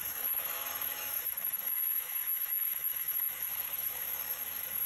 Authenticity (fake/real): fake